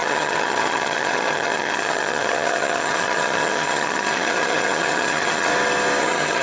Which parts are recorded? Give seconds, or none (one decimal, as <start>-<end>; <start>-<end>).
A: 5.5-6.0